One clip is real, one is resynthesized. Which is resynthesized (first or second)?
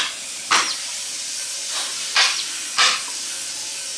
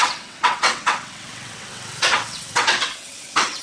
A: second